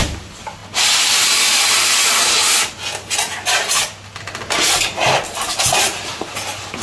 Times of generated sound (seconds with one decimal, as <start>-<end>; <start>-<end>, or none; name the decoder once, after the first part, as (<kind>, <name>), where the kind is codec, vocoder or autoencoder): none